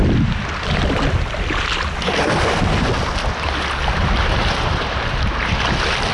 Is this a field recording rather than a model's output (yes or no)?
yes